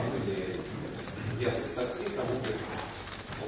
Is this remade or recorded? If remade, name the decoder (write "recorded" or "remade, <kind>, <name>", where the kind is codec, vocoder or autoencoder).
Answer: remade, vocoder, BigVGAN v2